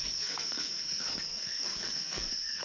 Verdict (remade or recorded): remade